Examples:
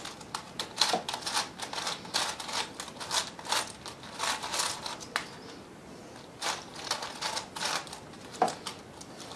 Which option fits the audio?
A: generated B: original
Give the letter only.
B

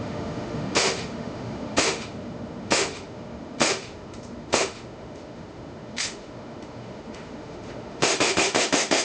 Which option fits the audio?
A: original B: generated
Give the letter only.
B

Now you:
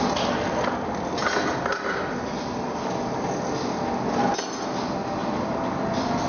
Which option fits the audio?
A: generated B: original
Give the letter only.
B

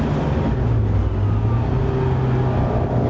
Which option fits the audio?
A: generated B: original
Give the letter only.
B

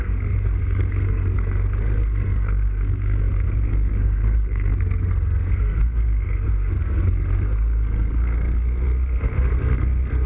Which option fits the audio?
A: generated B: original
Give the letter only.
A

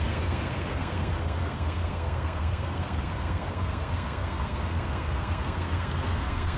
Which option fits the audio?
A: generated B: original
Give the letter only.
A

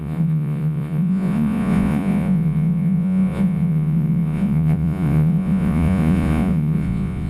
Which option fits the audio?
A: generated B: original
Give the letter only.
A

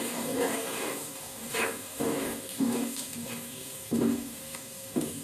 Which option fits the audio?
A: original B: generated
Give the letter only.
B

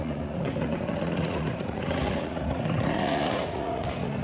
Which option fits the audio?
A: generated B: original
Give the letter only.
A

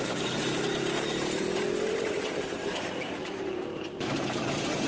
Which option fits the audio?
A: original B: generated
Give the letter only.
B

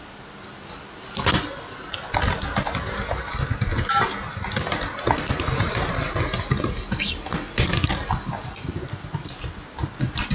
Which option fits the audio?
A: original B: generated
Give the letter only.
A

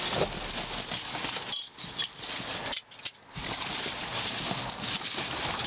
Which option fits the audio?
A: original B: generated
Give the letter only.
A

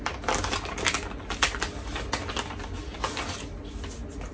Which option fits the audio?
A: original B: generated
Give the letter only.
A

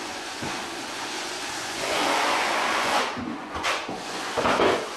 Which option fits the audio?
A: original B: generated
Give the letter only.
B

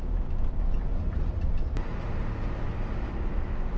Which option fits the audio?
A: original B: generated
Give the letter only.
A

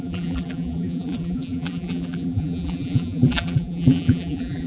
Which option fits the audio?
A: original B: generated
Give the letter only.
B